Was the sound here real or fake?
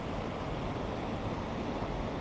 real